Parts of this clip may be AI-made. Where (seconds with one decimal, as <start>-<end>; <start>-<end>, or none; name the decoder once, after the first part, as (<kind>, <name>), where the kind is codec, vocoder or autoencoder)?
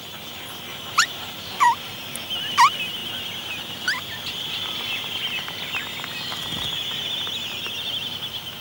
0.7-2.2 (vocoder, BigVGAN v2)